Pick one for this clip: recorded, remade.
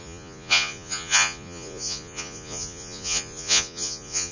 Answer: remade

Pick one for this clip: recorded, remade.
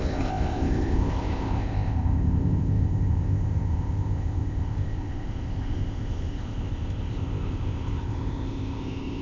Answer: remade